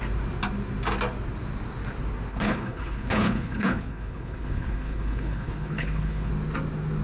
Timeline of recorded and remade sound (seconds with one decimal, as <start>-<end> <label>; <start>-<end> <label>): 0.0-2.3 recorded; 2.3-6.3 remade; 6.3-7.0 recorded